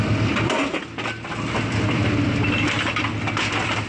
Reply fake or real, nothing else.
fake